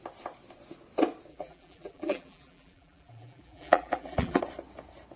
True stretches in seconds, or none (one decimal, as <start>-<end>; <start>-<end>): 0.0-1.3; 4.4-5.2

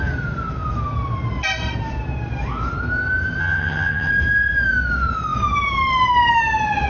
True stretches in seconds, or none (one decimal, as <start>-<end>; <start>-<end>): 0.0-3.4; 4.1-6.9

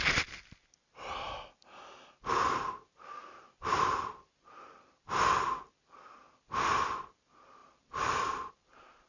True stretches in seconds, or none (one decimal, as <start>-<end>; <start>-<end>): 0.0-9.1

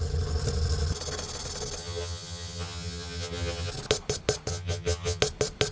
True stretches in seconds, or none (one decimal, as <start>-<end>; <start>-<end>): 0.0-1.8; 3.7-4.5; 5.2-5.7

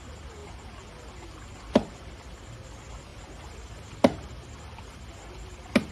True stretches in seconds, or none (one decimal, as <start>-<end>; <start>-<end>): 0.0-0.4; 1.1-5.9

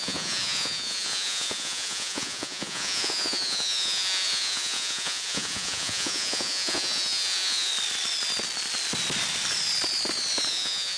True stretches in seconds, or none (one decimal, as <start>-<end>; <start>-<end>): 7.7-10.5

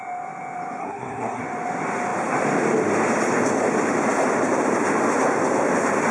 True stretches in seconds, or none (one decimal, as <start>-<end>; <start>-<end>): 0.0-0.8; 1.4-6.1

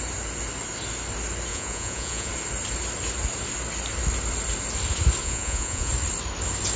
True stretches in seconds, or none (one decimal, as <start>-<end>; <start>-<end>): 0.0-1.5; 2.3-5.2; 5.9-6.8